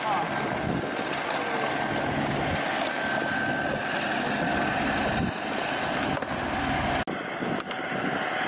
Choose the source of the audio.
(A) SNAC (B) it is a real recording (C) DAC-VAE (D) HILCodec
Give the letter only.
B